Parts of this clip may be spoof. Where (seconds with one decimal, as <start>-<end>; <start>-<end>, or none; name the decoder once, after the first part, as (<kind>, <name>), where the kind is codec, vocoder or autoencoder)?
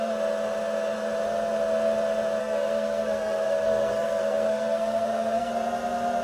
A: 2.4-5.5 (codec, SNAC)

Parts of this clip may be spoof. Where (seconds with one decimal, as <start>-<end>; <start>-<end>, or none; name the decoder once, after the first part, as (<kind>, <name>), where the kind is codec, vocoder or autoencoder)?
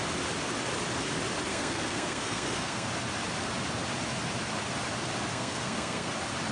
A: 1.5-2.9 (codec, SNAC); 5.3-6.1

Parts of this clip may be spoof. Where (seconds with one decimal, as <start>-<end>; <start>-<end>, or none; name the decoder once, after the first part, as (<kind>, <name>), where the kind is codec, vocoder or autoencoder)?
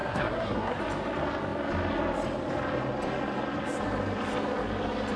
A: 0.0-0.8 (codec, SNAC)